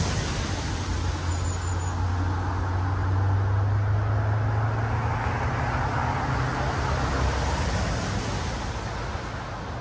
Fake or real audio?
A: real